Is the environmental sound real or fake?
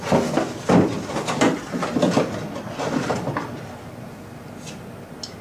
real